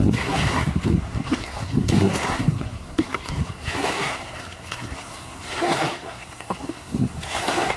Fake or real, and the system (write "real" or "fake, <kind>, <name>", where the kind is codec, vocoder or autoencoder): fake, codec, SNAC